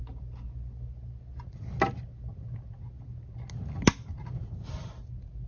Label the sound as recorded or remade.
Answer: recorded